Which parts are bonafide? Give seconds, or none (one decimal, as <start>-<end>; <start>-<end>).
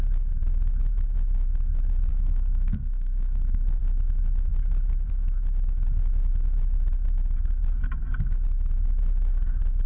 0.0-2.1; 3.8-9.9